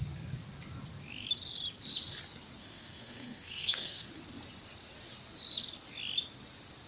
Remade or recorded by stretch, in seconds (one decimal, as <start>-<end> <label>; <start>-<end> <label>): 0.0-2.6 recorded; 2.6-4.1 remade; 4.1-6.9 recorded